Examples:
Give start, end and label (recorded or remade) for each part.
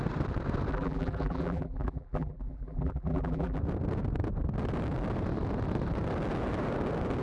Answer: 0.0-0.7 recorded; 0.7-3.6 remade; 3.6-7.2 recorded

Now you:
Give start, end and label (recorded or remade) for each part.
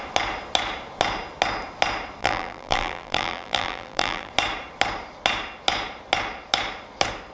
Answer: 0.0-2.2 recorded; 2.2-4.3 remade; 4.3-7.3 recorded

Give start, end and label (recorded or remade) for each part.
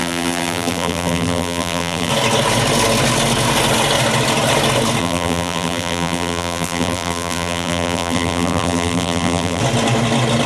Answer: 0.0-2.1 remade; 2.1-5.0 recorded; 5.0-9.6 remade; 9.6-10.5 recorded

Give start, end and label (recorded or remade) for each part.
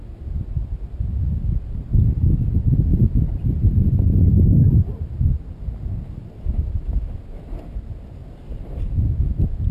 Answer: 0.0-2.9 recorded; 2.9-5.9 remade; 5.9-8.2 recorded; 8.2-8.8 remade; 8.8-9.7 recorded